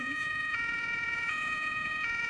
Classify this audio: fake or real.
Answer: fake